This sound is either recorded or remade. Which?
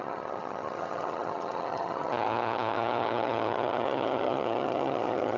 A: remade